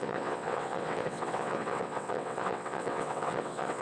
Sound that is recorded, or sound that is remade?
remade